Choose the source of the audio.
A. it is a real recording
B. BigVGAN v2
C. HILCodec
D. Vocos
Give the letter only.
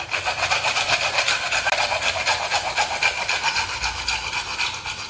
A